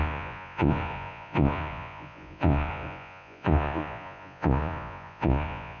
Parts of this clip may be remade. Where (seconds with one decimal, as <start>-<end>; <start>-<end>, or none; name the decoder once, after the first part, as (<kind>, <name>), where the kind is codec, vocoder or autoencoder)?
0.0-5.8 (vocoder, Vocos)